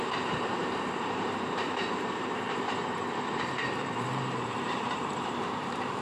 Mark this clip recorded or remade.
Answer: remade